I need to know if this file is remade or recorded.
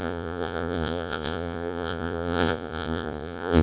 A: remade